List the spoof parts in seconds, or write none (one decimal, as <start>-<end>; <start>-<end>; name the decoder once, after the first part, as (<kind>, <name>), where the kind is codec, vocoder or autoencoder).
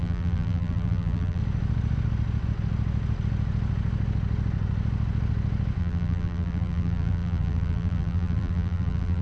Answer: 0.0-1.4 (vocoder, BigVGAN v2); 5.8-9.2